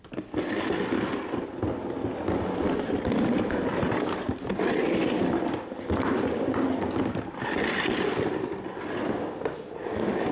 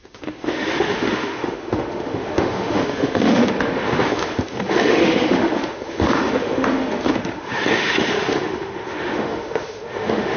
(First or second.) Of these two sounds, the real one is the first